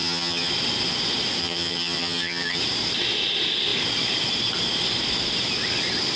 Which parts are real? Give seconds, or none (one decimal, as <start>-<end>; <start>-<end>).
0.5-1.4; 2.6-6.2